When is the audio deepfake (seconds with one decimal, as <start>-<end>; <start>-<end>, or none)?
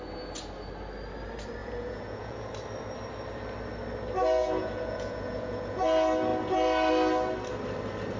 1.6-2.5; 4.4-5.8